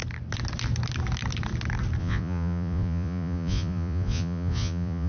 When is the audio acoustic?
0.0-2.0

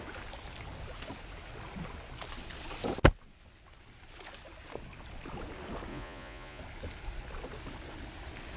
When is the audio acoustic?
0.0-5.9; 6.6-8.6

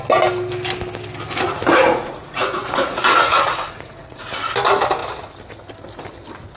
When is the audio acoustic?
0.0-1.7; 4.3-6.6

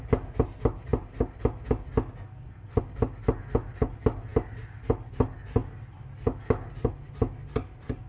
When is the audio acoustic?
0.0-8.1